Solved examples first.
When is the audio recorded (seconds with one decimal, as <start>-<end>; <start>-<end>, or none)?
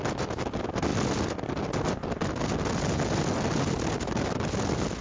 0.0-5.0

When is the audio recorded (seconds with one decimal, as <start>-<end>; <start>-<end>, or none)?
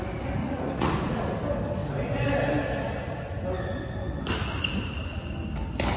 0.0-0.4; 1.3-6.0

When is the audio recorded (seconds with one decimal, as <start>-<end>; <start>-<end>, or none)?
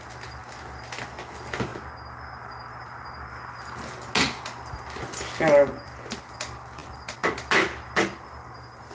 0.0-8.9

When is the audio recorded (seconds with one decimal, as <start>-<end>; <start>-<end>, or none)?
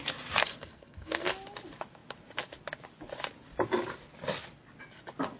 0.0-0.4; 1.3-5.4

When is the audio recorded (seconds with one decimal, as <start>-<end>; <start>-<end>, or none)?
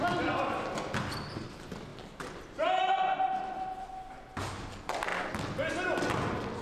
0.0-6.6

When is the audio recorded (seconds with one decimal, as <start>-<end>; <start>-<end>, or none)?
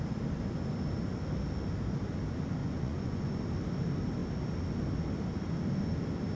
0.0-2.6; 3.4-6.3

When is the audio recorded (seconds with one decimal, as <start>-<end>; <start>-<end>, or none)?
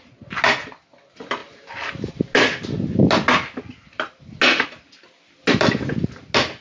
0.0-6.6